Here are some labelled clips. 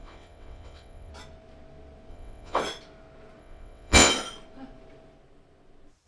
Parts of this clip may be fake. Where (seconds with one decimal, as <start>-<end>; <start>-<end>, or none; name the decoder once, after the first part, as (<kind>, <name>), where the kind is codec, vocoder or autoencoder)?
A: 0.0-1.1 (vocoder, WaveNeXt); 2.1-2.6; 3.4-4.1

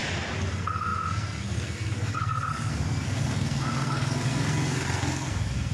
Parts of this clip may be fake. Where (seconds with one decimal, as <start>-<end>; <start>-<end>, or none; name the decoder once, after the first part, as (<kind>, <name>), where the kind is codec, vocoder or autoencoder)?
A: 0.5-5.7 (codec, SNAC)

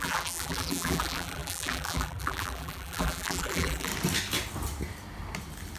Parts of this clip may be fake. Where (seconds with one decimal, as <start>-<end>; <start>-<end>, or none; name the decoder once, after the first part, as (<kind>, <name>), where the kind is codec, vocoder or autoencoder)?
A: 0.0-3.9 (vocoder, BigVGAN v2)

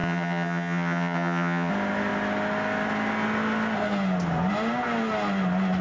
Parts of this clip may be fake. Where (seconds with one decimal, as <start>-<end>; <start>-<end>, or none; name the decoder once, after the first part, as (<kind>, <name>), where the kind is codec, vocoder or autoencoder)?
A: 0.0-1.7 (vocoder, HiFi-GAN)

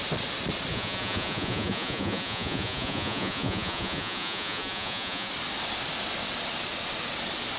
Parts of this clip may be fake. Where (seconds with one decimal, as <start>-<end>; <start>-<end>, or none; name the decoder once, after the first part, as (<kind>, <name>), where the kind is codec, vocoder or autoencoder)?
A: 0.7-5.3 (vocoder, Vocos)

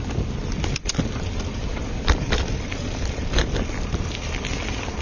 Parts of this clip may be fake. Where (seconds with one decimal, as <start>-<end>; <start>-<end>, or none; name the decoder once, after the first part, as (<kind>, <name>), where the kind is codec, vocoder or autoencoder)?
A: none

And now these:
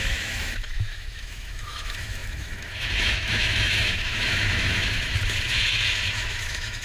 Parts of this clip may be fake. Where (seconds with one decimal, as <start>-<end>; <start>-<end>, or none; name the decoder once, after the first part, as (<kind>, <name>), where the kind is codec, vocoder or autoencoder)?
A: 0.0-6.8 (autoencoder, DAC-VAE)